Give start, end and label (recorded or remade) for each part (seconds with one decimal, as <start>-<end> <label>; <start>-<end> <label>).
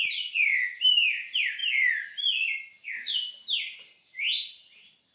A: 0.0-1.6 remade; 1.6-2.6 recorded; 2.6-5.1 remade